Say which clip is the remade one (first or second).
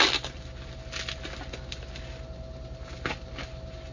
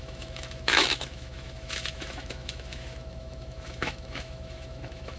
second